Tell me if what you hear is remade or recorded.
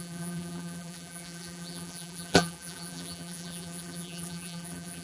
remade